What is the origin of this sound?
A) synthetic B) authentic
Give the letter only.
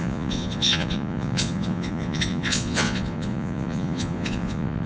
A